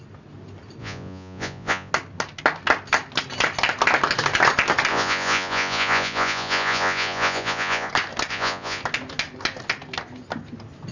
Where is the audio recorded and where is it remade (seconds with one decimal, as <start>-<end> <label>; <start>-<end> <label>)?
0.0-0.8 recorded; 0.8-1.9 remade; 1.9-4.9 recorded; 4.9-7.9 remade; 7.9-8.3 recorded; 8.3-8.8 remade; 8.8-10.9 recorded